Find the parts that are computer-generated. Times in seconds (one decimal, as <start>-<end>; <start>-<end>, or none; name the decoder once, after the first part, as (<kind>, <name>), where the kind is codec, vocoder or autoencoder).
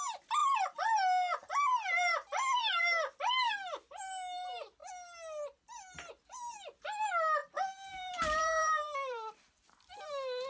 0.4-0.9 (vocoder, BigVGAN v2); 7.4-9.9